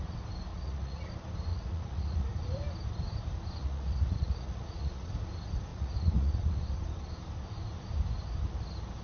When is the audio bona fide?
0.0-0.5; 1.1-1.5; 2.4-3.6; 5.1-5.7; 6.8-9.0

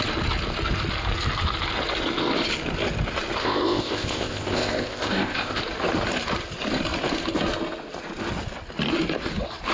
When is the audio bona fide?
0.0-3.4; 5.6-9.7

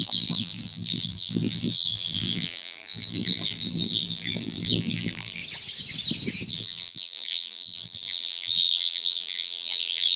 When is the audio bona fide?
5.4-6.5

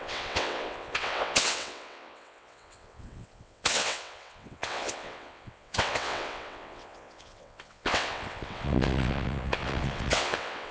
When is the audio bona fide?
none

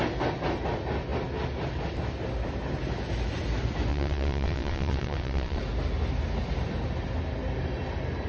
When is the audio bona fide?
0.0-3.9; 5.6-8.3

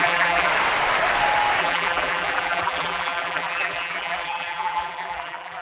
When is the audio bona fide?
0.5-1.6

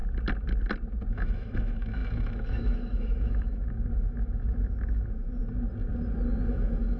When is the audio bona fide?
0.0-1.1; 5.4-6.5

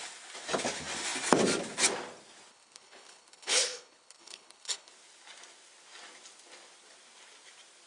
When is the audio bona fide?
0.0-2.5; 4.9-7.9